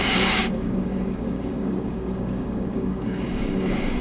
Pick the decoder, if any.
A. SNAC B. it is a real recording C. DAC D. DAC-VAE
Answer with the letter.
C